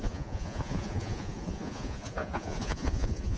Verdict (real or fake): fake